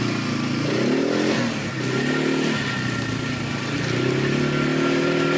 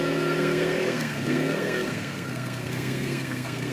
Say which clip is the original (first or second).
first